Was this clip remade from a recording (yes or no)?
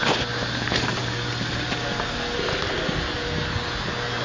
no